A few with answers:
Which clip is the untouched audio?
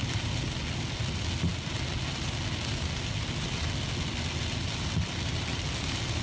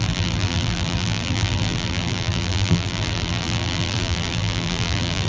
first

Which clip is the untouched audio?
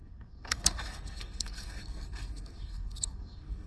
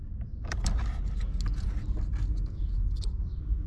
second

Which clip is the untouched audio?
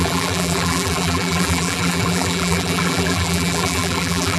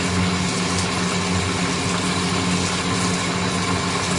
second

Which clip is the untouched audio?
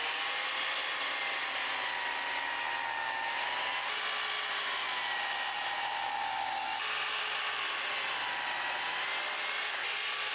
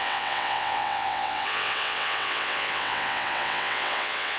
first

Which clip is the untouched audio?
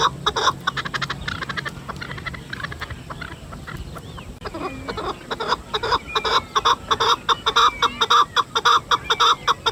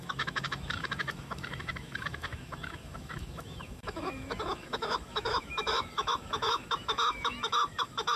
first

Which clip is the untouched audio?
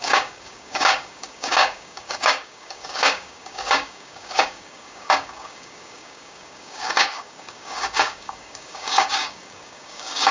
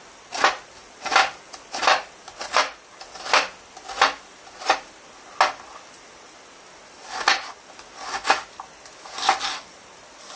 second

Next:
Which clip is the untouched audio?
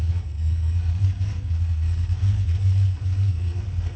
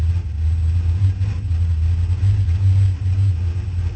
second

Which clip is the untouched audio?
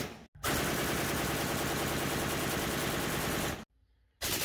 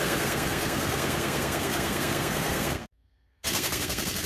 first